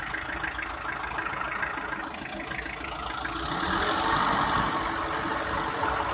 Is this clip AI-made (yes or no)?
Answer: no